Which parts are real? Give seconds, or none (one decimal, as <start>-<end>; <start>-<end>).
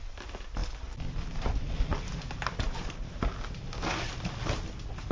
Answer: 0.0-0.6; 1.5-5.1